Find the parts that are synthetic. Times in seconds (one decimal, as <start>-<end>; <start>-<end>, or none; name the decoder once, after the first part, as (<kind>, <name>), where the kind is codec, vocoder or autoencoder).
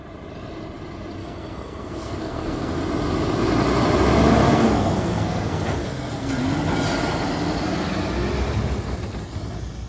1.2-2.8 (codec, SNAC); 4.4-6.3